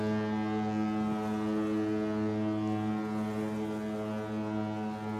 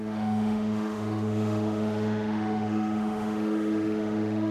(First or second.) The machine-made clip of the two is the second